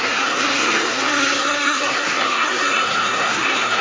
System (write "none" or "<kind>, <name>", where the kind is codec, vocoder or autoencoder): codec, SNAC